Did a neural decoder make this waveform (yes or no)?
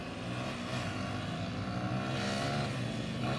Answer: no